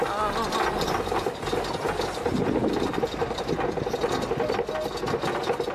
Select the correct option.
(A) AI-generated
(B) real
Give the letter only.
B